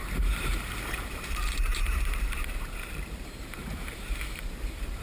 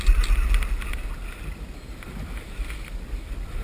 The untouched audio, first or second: second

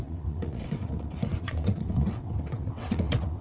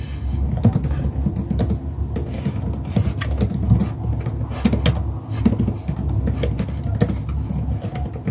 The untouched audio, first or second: second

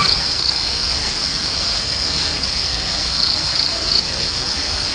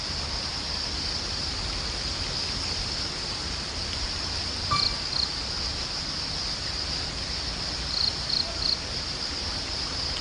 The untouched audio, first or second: second